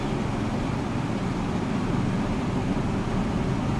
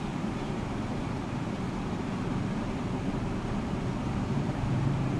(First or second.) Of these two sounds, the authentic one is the first